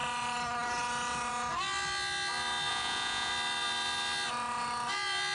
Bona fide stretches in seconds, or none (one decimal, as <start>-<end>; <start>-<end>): 0.0-2.7; 3.3-5.3